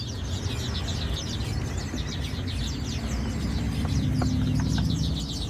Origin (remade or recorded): recorded